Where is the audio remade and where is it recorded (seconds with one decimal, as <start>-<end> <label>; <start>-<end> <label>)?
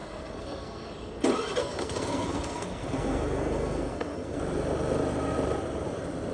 0.0-0.9 remade; 0.9-1.6 recorded; 1.6-4.4 remade; 4.4-6.3 recorded